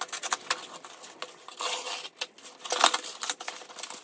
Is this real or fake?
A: real